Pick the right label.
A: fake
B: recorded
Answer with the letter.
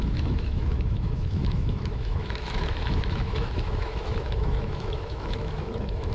A